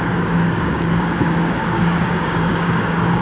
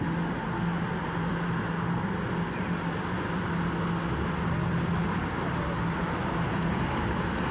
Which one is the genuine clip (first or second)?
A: second